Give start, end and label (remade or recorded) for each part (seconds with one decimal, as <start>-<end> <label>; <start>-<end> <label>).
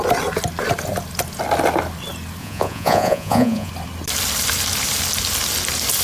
0.0-2.4 recorded; 2.4-3.7 remade; 3.7-6.0 recorded